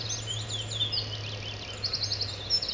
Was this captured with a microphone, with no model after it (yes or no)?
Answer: yes